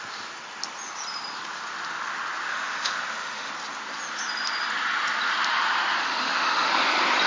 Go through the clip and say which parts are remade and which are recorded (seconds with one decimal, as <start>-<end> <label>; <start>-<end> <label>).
0.0-2.5 recorded; 2.5-3.5 remade; 3.5-6.0 recorded; 6.0-6.7 remade; 6.7-7.3 recorded